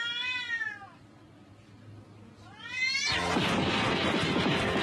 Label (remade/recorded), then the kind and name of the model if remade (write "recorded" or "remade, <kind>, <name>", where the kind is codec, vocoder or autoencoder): recorded